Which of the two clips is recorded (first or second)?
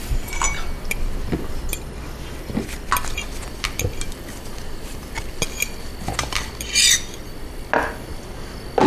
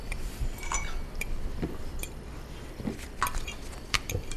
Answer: first